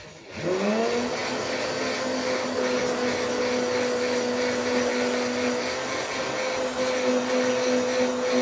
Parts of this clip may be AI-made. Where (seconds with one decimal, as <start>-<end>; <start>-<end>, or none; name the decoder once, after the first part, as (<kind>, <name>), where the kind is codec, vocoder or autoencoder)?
none